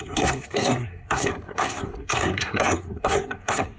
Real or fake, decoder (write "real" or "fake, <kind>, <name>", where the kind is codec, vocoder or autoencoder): fake, codec, SNAC